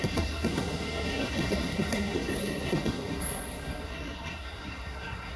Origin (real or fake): fake